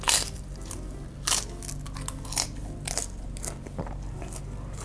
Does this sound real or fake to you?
real